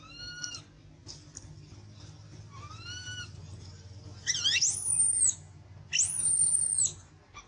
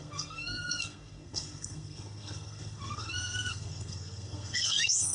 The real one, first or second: first